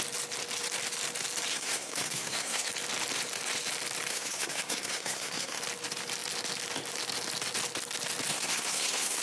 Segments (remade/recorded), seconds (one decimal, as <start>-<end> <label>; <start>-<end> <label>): 0.0-1.5 recorded; 1.5-2.7 remade; 2.7-4.1 recorded; 4.1-5.6 remade; 5.6-8.3 recorded; 8.3-9.2 remade